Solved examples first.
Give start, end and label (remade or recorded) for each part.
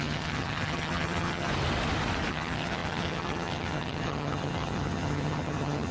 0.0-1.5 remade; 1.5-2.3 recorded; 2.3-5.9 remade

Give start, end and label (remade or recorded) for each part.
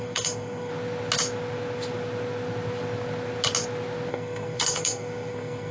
0.0-0.7 remade; 0.7-4.1 recorded; 4.1-5.7 remade